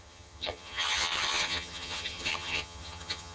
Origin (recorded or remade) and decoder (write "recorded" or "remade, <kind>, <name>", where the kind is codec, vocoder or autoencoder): remade, vocoder, HiFi-GAN